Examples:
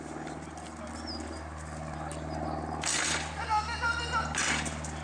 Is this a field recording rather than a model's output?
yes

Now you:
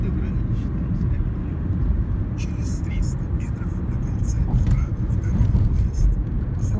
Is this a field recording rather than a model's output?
no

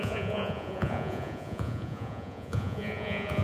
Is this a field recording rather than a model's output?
no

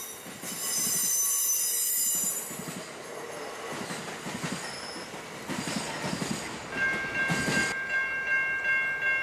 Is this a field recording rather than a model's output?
yes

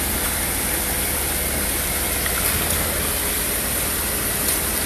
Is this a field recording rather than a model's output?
yes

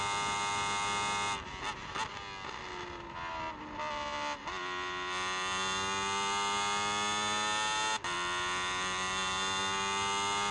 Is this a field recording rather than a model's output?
yes